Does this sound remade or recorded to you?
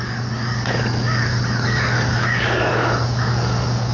remade